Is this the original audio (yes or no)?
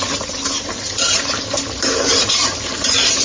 no